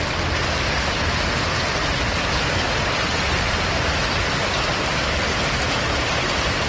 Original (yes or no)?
yes